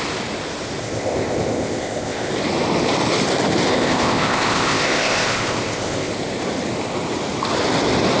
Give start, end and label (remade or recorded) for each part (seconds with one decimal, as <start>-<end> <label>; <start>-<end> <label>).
0.0-0.8 recorded; 0.8-2.3 remade; 2.3-3.7 recorded; 3.7-6.1 remade; 6.1-8.2 recorded